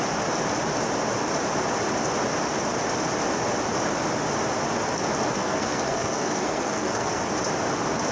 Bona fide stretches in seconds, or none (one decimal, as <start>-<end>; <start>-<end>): 0.0-5.4; 7.3-8.1